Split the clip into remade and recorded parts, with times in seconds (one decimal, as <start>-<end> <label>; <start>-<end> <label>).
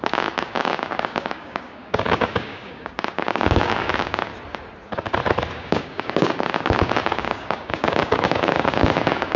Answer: 0.0-4.3 remade; 4.3-5.5 recorded; 5.5-9.4 remade